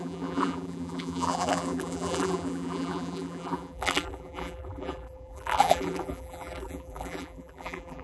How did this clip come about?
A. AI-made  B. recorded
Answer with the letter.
A